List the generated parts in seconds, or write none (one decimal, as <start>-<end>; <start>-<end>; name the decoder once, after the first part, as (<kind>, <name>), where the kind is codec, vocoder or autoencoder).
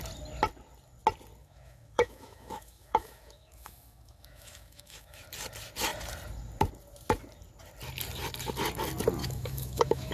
1.4-5.2 (autoencoder, DAC-VAE); 9.2-10.1